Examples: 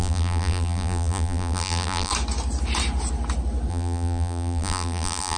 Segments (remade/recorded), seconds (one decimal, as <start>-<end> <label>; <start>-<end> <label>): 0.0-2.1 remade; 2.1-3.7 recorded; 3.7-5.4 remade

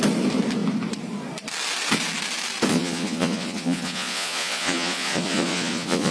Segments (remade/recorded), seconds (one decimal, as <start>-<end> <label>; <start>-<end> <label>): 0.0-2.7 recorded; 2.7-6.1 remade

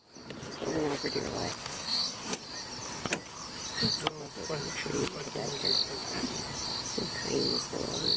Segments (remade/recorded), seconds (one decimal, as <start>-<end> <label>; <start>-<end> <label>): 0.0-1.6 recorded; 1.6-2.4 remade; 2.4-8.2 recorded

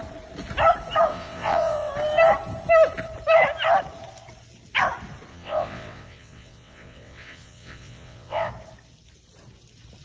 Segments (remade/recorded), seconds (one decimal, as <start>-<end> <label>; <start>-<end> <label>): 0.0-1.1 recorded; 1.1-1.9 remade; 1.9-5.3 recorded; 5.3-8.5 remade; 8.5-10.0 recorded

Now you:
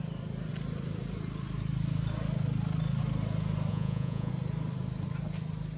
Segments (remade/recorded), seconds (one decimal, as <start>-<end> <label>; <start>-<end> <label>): 0.0-3.7 recorded; 3.7-4.3 remade; 4.3-5.8 recorded

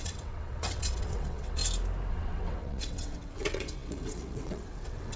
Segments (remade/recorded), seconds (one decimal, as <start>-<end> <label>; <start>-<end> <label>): 0.0-1.6 remade; 1.6-2.1 recorded; 2.1-5.2 remade